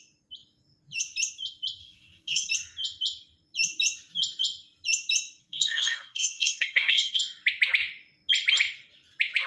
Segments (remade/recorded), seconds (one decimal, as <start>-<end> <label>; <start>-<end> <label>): 0.0-1.8 recorded; 1.8-2.5 remade; 2.5-5.4 recorded; 5.4-7.2 remade; 7.2-9.5 recorded